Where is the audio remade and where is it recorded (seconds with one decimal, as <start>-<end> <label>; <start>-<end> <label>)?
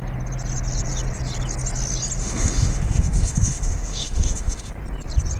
0.0-2.2 recorded; 2.2-4.7 remade; 4.7-5.4 recorded